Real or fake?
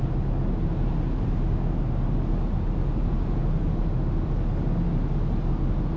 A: real